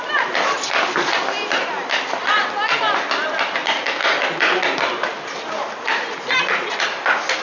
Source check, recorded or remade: recorded